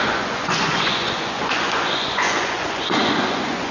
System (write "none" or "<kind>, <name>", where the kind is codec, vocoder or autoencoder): vocoder, Vocos